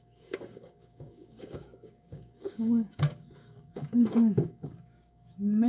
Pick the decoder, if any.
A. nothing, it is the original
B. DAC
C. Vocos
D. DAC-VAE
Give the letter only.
B